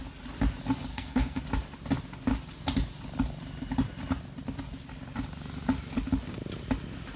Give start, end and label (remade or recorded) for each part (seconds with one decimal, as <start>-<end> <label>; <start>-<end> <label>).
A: 0.0-0.9 recorded; 0.9-1.4 remade; 1.4-7.2 recorded